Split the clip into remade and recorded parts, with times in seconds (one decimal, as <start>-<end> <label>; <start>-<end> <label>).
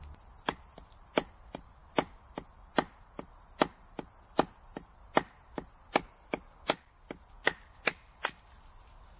0.0-9.2 recorded